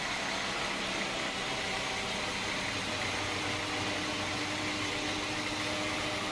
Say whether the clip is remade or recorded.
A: recorded